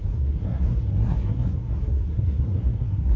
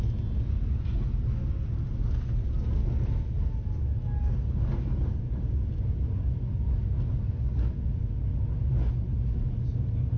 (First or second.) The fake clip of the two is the first